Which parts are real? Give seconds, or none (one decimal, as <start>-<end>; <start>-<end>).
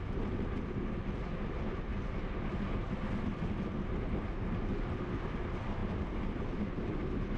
0.0-7.4